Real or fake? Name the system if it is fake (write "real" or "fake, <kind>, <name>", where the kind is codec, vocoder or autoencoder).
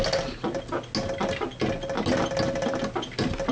real